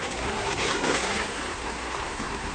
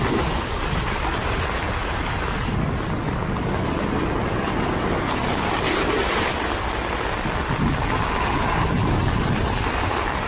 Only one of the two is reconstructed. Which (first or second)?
first